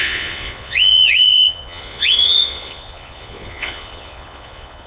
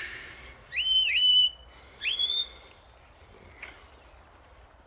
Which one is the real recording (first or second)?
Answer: second